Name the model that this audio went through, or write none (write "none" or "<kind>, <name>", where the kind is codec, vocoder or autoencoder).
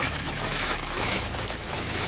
autoencoder, DAC-VAE